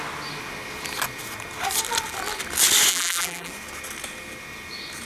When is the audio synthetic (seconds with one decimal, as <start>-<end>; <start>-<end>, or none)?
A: 2.9-3.5